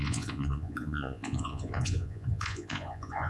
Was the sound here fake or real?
fake